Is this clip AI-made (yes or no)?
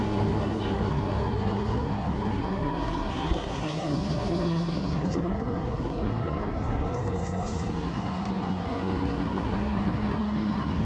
yes